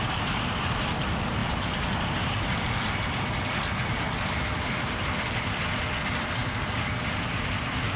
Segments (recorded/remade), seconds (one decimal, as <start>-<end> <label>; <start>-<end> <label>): 0.0-8.0 recorded